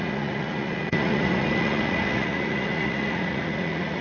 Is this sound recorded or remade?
remade